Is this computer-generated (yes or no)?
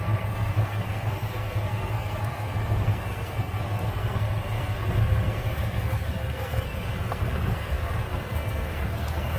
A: yes